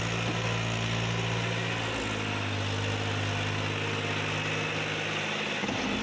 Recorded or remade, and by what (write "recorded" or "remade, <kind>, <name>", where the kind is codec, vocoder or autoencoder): recorded